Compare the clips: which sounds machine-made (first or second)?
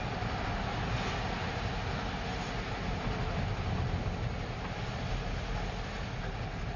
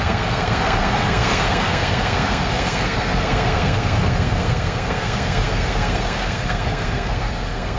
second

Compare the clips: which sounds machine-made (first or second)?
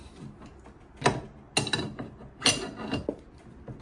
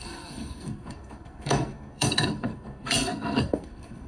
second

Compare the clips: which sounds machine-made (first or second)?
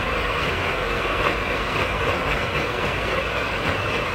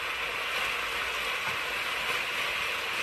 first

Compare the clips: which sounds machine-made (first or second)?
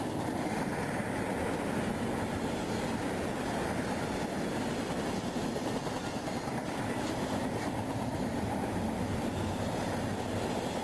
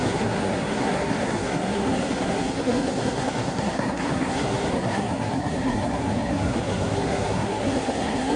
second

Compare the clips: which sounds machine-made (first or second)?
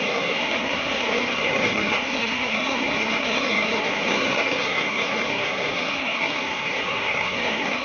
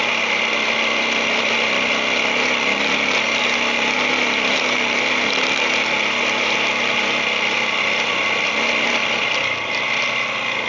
first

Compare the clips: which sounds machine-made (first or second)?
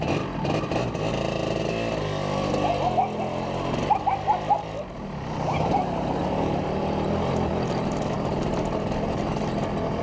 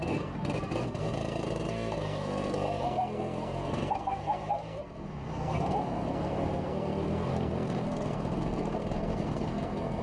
second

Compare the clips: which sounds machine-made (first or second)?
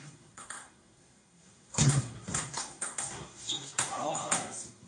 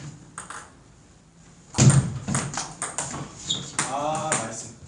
first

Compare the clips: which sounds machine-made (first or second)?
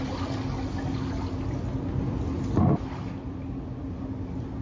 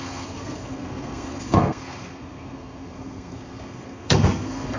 second